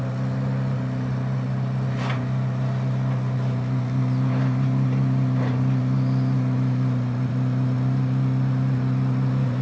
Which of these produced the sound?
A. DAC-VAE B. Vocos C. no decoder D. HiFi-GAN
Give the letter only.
C